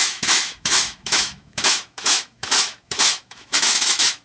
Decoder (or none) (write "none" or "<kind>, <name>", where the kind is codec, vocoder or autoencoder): autoencoder, DAC-VAE